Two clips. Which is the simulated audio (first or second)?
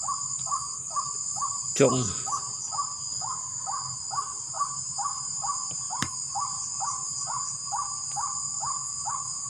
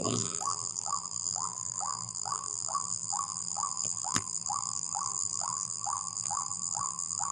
second